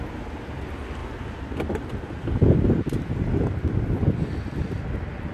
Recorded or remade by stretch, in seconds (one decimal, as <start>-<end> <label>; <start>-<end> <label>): 0.0-5.3 recorded